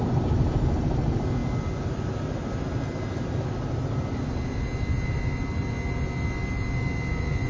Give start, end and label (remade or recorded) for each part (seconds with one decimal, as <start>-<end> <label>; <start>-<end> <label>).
0.0-7.5 recorded